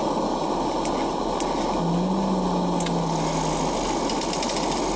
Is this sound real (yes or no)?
yes